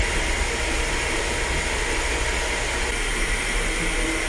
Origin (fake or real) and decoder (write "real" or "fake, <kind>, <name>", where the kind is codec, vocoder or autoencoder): real